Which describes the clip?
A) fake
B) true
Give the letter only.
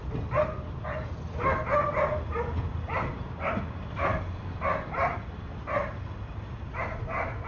B